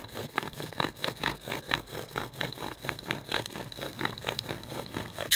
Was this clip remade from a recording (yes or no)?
yes